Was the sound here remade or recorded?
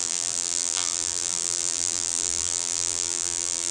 remade